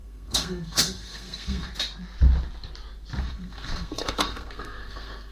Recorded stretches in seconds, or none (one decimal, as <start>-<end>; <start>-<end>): 1.7-3.2